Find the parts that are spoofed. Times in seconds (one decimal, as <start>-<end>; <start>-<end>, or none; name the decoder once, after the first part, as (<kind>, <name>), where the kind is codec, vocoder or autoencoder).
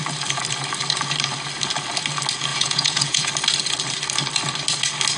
2.5-3.3 (vocoder, Vocos)